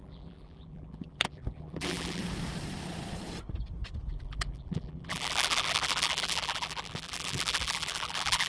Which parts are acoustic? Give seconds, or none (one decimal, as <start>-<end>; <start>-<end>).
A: 2.2-4.1

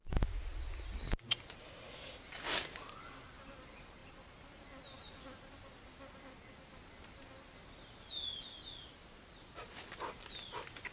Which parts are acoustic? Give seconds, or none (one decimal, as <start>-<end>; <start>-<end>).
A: 0.0-10.9

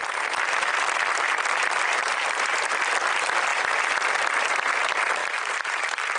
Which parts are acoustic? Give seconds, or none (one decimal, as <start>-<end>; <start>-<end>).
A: 0.0-2.0; 2.8-5.2

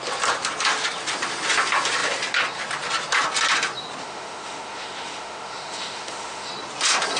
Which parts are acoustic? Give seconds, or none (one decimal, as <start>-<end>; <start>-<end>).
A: 0.0-4.0; 6.5-7.2

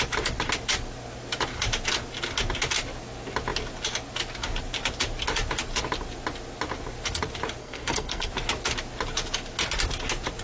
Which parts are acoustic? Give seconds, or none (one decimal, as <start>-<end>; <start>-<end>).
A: 0.0-7.6; 8.3-10.4

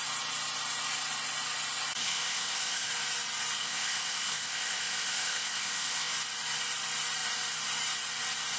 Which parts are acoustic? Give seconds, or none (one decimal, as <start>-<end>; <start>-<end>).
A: 0.0-2.0; 2.9-3.6; 6.1-8.6